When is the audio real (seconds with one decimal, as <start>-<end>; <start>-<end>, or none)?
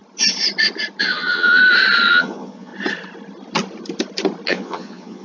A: 0.0-1.0; 1.6-2.1; 2.7-4.5